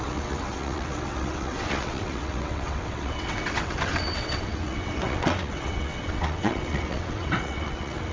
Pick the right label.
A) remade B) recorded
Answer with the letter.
A